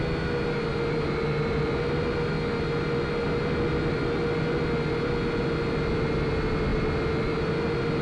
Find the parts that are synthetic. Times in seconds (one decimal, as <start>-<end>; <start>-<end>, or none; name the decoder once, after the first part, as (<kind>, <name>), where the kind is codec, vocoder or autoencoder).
none